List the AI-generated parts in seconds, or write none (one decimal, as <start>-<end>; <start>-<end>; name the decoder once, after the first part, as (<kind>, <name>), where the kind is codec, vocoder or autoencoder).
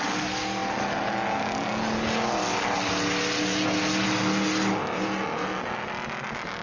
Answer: none